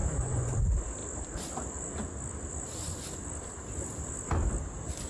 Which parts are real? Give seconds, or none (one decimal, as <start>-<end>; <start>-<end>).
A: 0.6-5.1